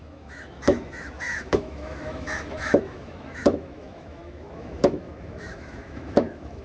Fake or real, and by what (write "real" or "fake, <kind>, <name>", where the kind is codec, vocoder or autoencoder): fake, autoencoder, DAC-VAE